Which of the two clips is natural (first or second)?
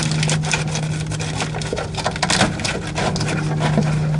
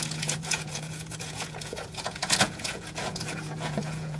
first